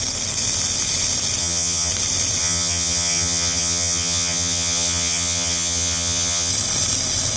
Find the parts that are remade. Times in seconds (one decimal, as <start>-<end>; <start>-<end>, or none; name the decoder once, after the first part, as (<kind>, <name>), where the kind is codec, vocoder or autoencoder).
1.4-1.9 (vocoder, HiFi-GAN); 2.4-6.5

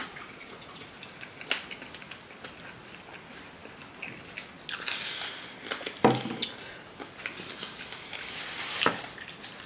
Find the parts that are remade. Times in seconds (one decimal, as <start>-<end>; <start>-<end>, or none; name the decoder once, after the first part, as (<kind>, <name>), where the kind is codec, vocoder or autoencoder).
0.0-0.9 (vocoder, Vocos)